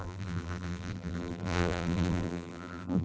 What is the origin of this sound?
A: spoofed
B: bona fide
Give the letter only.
A